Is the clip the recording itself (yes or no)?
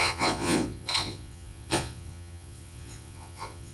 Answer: no